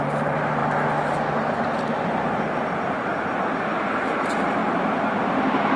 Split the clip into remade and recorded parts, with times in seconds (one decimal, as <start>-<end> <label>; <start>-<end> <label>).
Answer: 0.0-0.6 remade; 0.6-1.9 recorded; 1.9-3.1 remade; 3.1-4.0 recorded; 4.0-5.8 remade